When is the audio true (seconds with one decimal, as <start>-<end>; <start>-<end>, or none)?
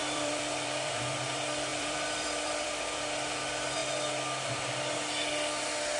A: 1.1-1.7; 3.0-6.0